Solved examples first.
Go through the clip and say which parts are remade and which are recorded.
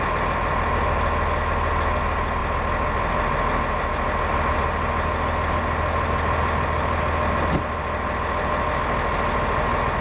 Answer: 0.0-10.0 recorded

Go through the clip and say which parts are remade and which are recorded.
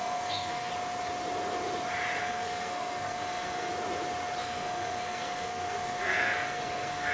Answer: 0.0-0.7 remade; 0.7-2.2 recorded; 2.2-3.7 remade; 3.7-4.4 recorded; 4.4-7.1 remade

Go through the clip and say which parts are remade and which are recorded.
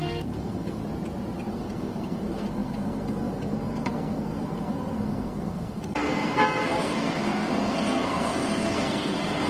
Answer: 0.0-0.8 remade; 0.8-1.5 recorded; 1.5-9.5 remade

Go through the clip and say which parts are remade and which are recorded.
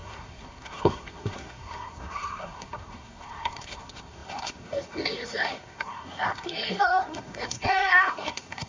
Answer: 0.0-8.7 remade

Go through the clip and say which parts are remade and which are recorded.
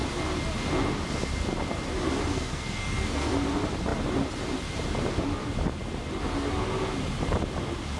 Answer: 0.0-2.3 recorded; 2.3-3.3 remade; 3.3-8.0 recorded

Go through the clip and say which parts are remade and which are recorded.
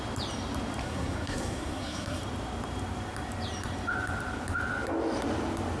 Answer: 0.0-0.8 recorded; 0.8-2.2 remade; 2.2-5.8 recorded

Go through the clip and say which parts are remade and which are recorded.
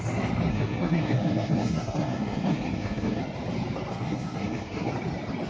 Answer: 0.0-0.5 recorded; 0.5-3.2 remade; 3.2-3.9 recorded; 3.9-4.9 remade; 4.9-5.5 recorded